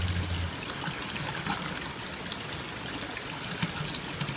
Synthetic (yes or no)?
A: no